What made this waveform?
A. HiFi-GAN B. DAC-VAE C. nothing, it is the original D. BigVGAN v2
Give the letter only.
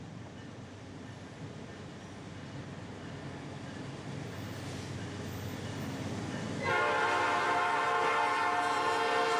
C